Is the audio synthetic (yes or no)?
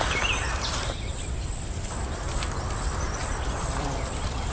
yes